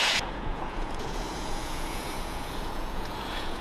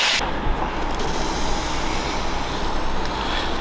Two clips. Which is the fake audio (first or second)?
first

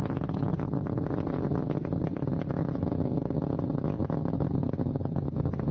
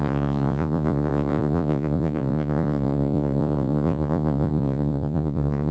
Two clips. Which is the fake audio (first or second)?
second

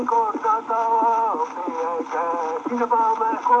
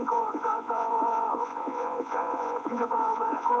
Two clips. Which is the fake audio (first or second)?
second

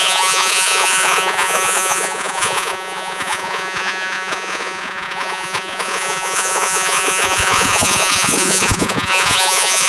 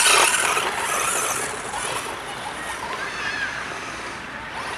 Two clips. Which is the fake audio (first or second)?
first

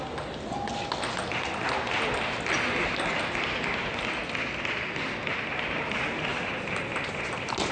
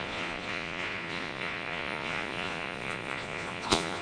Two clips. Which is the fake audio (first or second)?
second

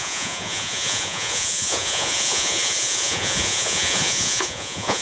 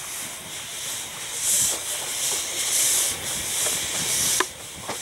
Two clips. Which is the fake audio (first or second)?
first